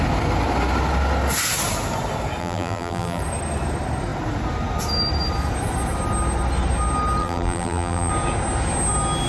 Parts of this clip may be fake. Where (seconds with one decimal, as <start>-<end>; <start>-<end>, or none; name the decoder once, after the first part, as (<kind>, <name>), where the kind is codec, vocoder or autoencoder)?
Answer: 2.4-3.2 (vocoder, BigVGAN v2); 7.2-8.1